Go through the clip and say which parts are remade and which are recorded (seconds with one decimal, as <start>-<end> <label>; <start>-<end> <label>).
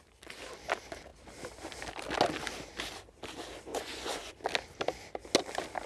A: 0.0-3.7 recorded; 3.7-4.3 remade; 4.3-5.9 recorded